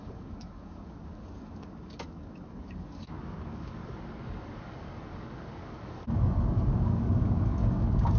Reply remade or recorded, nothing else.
remade